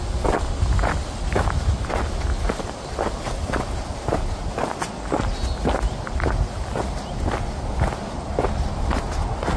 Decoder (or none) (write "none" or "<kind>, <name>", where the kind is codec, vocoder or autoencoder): none